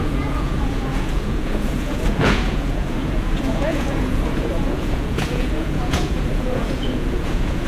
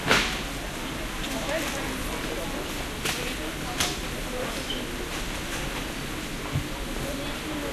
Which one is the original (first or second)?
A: second